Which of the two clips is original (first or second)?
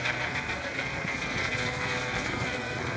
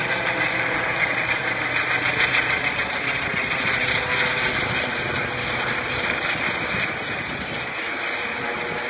second